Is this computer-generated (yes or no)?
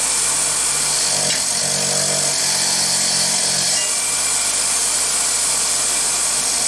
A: no